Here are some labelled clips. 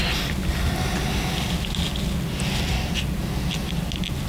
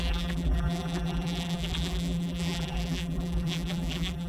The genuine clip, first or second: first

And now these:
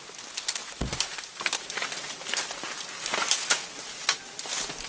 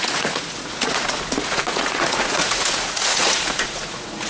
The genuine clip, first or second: first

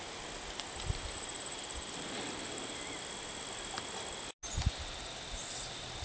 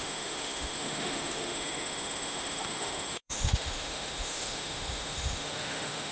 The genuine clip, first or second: first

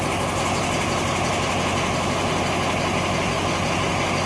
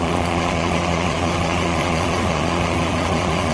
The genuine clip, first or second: first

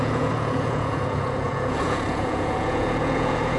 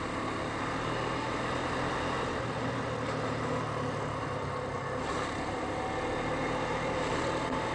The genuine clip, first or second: second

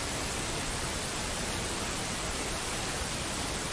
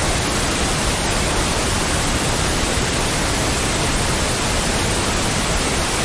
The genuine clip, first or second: second